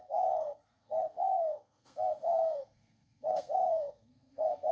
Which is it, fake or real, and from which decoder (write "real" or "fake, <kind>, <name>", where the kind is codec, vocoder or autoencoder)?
fake, codec, SNAC